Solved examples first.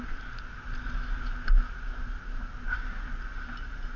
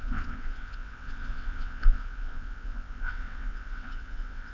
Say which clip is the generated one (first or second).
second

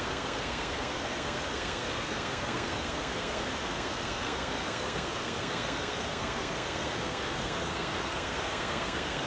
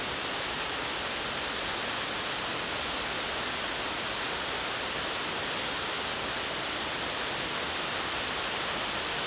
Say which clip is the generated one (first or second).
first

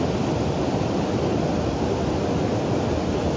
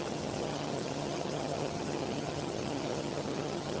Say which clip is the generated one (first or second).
second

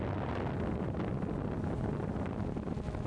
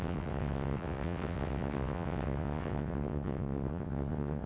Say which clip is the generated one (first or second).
second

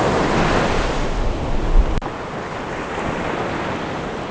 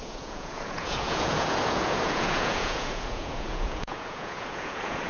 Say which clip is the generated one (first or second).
second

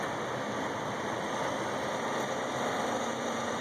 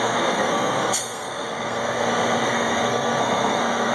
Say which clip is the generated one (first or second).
second